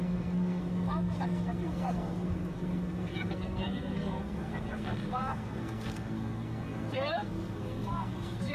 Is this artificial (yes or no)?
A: yes